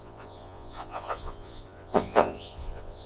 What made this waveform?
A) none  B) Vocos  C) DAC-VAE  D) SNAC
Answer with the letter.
B